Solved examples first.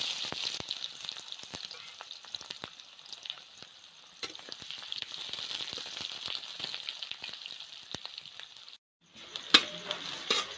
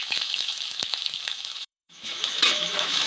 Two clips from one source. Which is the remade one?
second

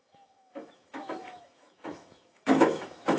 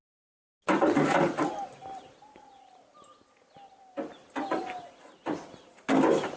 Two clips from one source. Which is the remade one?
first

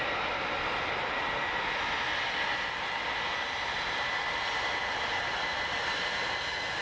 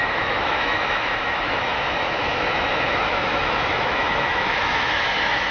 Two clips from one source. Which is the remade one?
second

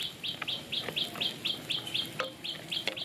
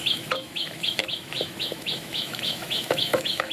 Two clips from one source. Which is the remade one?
second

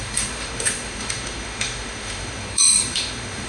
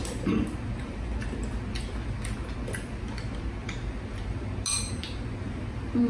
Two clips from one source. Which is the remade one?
first